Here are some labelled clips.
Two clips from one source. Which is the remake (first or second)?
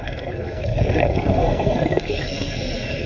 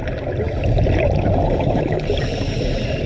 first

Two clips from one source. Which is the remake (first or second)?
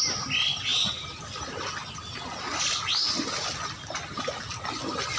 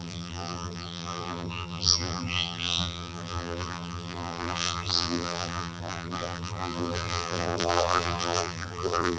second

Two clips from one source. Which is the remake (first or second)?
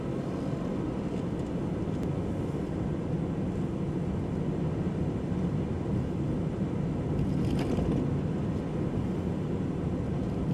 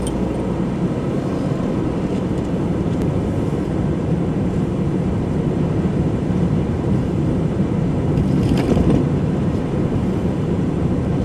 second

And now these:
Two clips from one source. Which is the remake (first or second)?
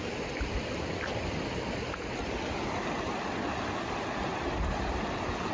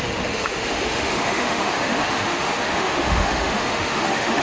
second